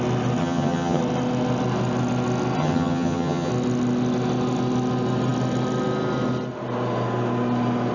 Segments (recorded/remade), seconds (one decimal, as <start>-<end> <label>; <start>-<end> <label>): 0.0-0.4 recorded; 0.4-1.0 remade; 1.0-2.6 recorded; 2.6-3.5 remade; 3.5-7.9 recorded